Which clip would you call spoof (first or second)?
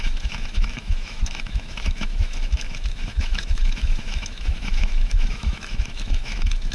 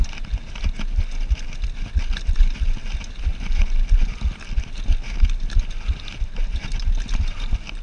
first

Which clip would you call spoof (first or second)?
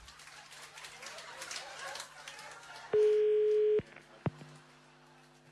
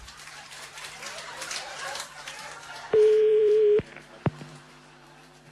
second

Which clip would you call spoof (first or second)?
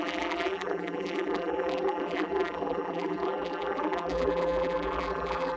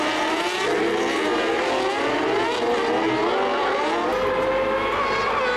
first